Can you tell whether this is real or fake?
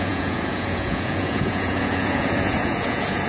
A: fake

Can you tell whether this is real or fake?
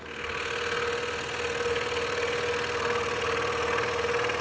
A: real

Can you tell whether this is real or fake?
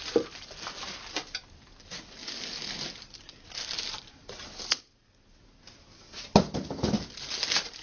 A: real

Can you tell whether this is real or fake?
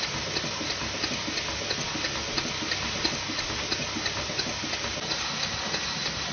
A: real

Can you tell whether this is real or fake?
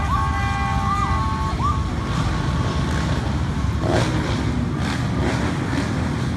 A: real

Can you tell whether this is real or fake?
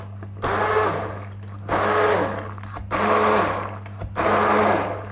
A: real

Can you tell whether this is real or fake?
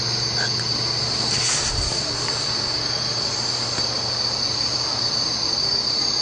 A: real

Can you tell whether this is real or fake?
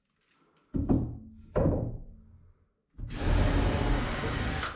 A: real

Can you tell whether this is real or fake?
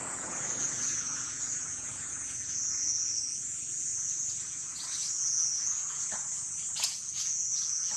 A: fake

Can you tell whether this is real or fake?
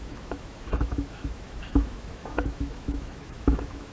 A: fake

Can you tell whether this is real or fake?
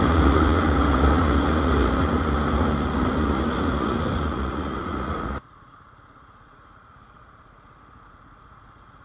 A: fake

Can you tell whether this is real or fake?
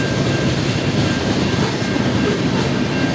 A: real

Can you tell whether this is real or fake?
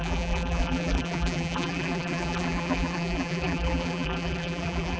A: fake